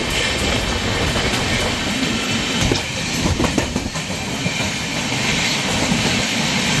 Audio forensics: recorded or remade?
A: recorded